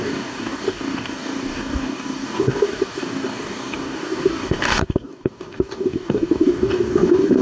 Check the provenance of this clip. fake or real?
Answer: fake